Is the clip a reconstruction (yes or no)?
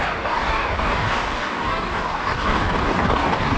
yes